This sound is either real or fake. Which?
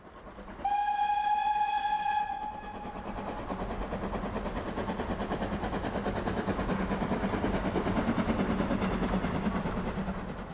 real